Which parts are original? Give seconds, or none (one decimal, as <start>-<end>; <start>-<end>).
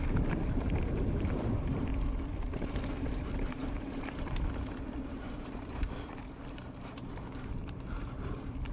1.9-3.0